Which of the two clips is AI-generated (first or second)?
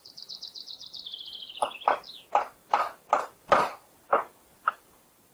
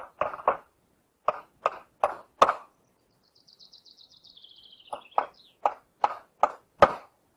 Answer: first